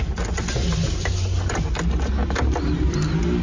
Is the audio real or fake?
real